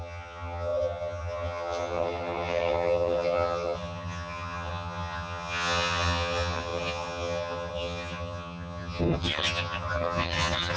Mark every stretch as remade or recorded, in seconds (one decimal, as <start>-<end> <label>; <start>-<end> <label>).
0.0-10.8 remade